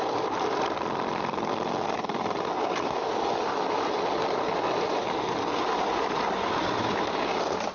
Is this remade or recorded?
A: recorded